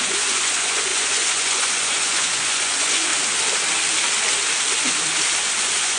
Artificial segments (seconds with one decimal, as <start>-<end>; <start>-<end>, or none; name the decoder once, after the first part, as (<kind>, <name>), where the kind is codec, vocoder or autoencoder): 0.0-3.1 (vocoder, Vocos); 5.6-6.0